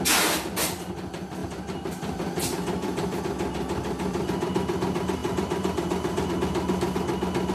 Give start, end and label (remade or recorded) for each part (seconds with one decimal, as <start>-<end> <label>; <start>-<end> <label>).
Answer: 0.0-1.4 recorded; 1.4-3.2 remade; 3.2-5.2 recorded; 5.2-6.3 remade; 6.3-7.5 recorded